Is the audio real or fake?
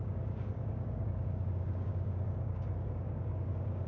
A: fake